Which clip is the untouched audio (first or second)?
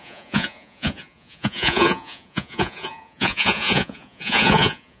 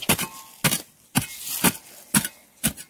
second